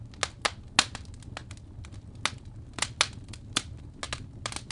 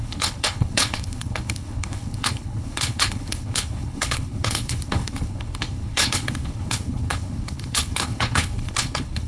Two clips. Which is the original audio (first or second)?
first